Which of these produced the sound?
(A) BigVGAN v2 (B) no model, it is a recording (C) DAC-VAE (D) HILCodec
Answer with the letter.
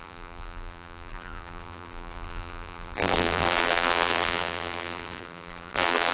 A